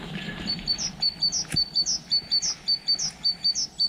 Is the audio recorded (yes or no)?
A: yes